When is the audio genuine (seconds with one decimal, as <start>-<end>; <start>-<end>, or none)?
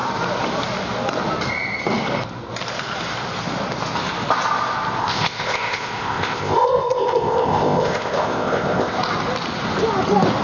0.0-5.0; 9.0-10.4